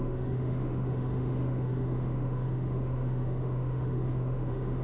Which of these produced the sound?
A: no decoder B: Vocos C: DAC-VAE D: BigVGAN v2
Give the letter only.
C